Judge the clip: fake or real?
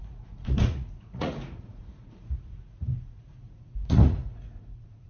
fake